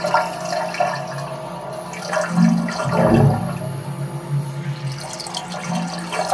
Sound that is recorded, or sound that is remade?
recorded